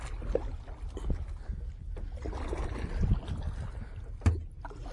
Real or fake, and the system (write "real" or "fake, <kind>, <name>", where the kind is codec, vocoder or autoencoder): real